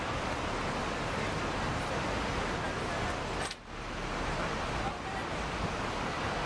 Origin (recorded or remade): recorded